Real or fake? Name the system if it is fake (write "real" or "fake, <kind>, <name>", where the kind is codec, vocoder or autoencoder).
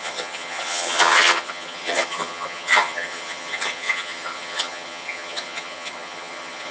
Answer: fake, vocoder, HiFi-GAN